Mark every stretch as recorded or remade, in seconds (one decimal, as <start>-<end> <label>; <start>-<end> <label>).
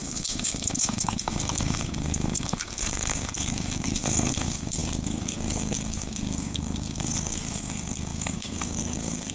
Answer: 0.0-9.3 remade